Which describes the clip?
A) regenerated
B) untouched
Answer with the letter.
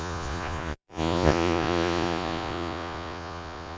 A